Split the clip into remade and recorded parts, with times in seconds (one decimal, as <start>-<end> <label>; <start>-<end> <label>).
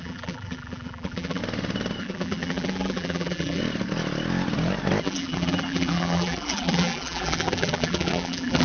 0.0-1.4 remade; 1.4-2.0 recorded; 2.0-3.6 remade; 3.6-5.0 recorded; 5.0-8.6 remade